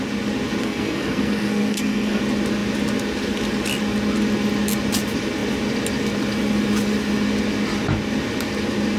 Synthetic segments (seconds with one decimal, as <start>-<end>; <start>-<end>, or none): 0.6-2.2